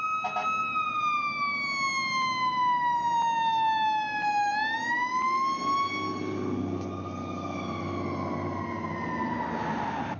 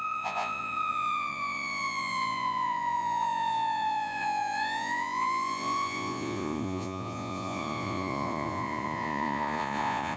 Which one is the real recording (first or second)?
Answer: first